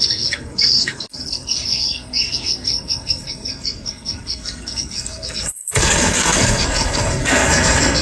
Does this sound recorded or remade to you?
remade